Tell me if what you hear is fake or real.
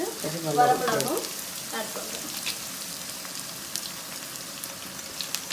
real